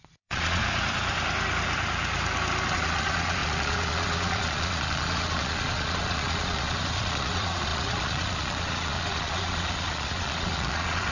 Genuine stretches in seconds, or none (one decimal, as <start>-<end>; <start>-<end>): 0.6-2.7